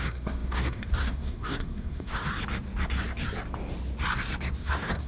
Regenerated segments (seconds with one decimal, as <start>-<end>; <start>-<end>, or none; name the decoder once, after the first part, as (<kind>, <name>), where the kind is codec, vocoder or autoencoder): 0.0-2.3 (codec, SNAC); 4.6-5.1

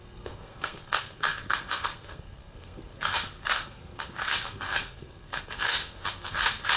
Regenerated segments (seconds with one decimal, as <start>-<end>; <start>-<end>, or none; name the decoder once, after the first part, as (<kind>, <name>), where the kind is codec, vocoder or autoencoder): 0.0-6.8 (codec, SNAC)